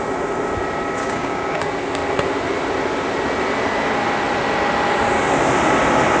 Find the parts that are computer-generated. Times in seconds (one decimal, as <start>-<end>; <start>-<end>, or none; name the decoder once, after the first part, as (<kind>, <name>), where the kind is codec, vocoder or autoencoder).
1.0-1.6 (codec, DAC)